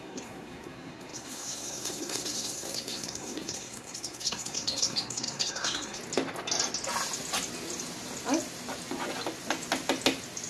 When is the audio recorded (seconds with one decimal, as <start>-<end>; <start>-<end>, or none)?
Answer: 6.0-10.5